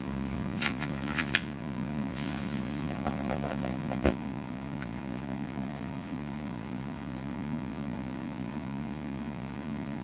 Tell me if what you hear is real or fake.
fake